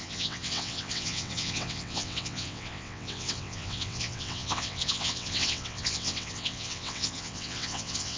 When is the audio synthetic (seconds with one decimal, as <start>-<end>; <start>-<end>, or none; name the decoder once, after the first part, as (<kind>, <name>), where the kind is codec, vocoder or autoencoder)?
0.0-8.2 (vocoder, WaveNeXt)